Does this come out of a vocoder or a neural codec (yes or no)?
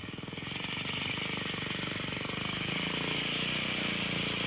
no